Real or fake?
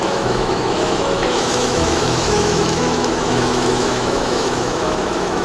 fake